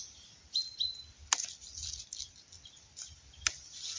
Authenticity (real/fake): real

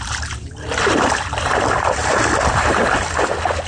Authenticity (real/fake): real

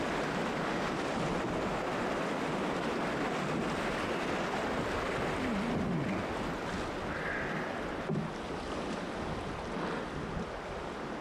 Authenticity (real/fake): real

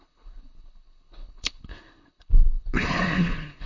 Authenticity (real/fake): fake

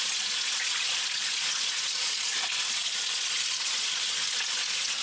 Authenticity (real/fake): fake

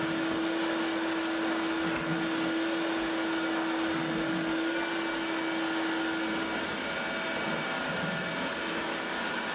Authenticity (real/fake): real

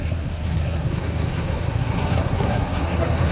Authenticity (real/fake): fake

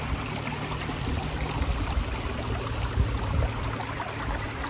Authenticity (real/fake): real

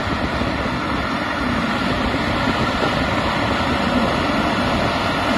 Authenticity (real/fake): real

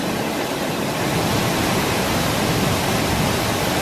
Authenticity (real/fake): real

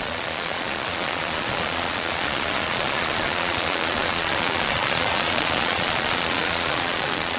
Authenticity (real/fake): fake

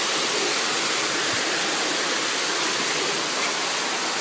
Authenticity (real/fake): real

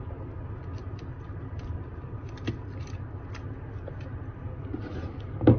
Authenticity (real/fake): real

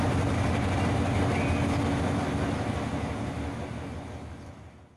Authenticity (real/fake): real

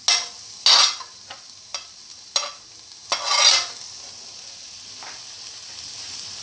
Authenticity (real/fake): real